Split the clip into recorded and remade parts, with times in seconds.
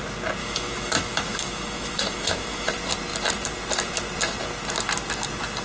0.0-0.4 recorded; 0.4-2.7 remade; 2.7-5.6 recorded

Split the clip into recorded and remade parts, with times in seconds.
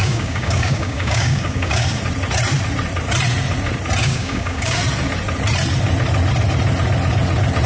0.0-2.0 remade; 2.0-4.0 recorded; 4.0-4.8 remade; 4.8-7.7 recorded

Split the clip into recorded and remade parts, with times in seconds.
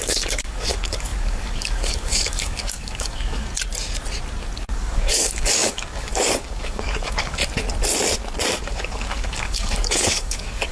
0.0-3.5 remade; 3.5-4.7 recorded; 4.7-7.4 remade; 7.4-8.6 recorded; 8.6-10.7 remade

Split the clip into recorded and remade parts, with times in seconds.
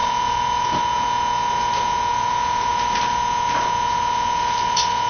0.0-0.8 remade; 0.8-2.1 recorded; 2.1-2.7 remade; 2.7-5.1 recorded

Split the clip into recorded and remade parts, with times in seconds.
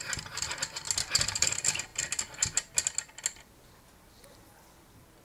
0.0-5.2 recorded